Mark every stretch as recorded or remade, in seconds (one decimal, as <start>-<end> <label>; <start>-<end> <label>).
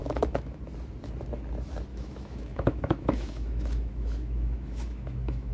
0.0-0.6 remade; 0.6-1.9 recorded; 1.9-5.5 remade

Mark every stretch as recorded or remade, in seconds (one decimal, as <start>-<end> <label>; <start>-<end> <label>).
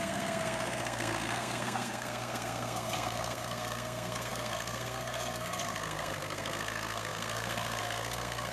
0.0-8.5 remade